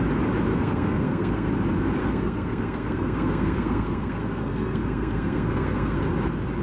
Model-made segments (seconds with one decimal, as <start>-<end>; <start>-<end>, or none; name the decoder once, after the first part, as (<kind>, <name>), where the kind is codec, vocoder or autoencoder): 0.5-1.5 (codec, SNAC); 2.0-6.0